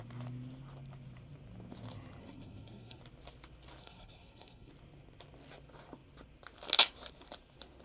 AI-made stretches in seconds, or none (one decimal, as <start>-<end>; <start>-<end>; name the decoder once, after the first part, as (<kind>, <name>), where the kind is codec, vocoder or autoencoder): 2.2-3.0 (codec, SNAC); 3.8-4.7